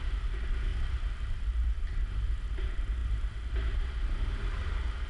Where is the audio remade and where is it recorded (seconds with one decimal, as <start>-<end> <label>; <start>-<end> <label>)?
0.0-5.1 recorded